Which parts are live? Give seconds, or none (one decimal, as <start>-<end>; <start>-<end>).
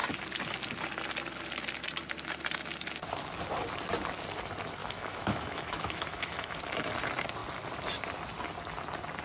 0.0-4.8; 6.6-9.2